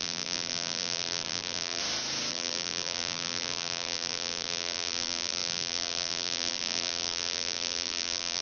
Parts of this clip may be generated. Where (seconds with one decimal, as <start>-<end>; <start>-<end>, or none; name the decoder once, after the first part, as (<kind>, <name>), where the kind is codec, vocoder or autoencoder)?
0.0-1.8 (vocoder, BigVGAN v2); 2.3-8.4